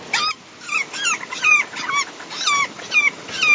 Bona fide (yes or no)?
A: yes